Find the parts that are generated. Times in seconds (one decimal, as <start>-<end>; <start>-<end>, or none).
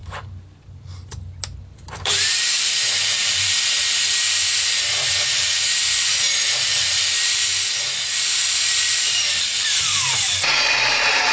2.0-11.3